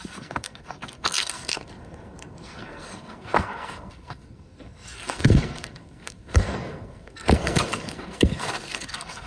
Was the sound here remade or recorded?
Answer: remade